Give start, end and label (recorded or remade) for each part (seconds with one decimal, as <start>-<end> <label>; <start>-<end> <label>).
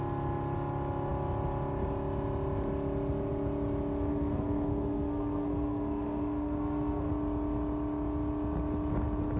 0.0-4.1 recorded; 4.1-7.1 remade; 7.1-9.4 recorded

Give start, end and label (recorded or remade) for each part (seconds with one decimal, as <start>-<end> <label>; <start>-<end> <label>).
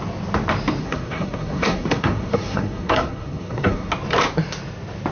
0.0-0.8 recorded; 0.8-3.9 remade; 3.9-5.1 recorded